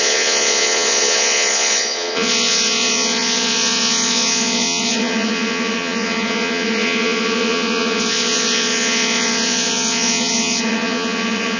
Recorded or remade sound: remade